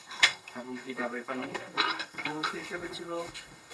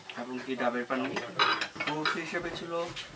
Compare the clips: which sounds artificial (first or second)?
first